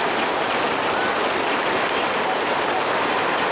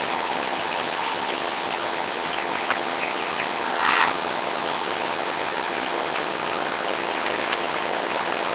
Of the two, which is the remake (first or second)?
second